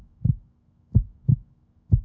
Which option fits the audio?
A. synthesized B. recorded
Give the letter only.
A